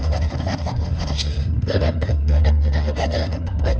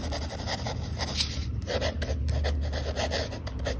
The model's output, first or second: first